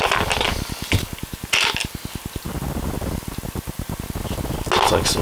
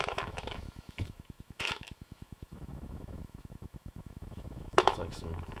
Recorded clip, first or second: first